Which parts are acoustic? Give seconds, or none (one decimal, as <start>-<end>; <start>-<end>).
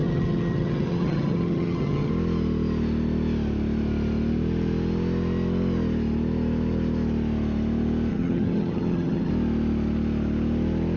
2.1-8.1; 9.3-11.0